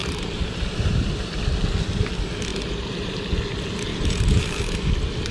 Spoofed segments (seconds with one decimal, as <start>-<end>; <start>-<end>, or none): 0.0-1.4; 2.5-3.2; 3.9-5.3